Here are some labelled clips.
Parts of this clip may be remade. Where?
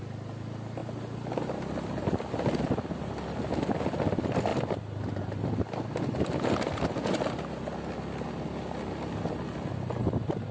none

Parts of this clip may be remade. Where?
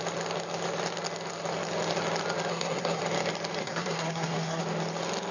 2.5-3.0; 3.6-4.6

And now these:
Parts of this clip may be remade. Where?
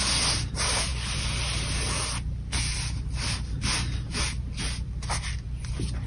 none